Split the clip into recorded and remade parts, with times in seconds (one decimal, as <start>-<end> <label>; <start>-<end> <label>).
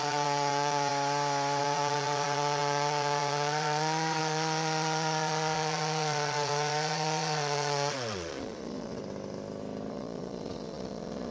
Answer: 0.0-0.9 remade; 0.9-1.6 recorded; 1.6-9.0 remade; 9.0-9.9 recorded; 9.9-11.3 remade